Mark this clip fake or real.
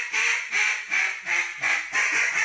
fake